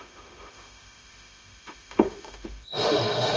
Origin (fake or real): fake